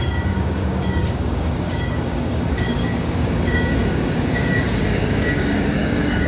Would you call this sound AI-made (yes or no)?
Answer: yes